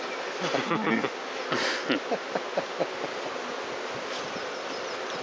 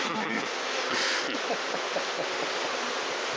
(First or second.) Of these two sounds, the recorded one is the first